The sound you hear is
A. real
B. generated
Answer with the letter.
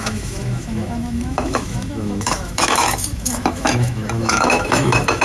B